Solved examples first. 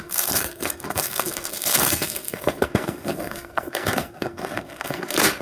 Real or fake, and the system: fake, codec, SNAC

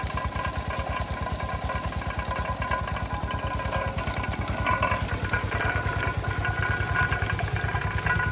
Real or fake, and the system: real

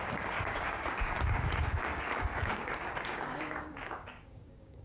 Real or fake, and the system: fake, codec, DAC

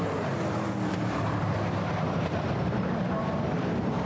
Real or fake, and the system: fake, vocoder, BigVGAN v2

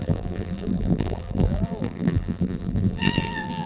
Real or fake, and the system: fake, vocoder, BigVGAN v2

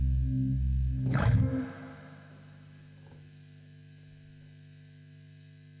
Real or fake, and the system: fake, autoencoder, DAC-VAE